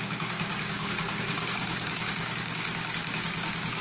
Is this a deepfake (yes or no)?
yes